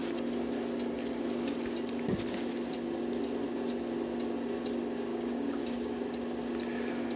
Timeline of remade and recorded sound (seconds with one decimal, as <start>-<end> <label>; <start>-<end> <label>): 0.0-5.1 recorded; 5.1-6.0 remade; 6.0-7.2 recorded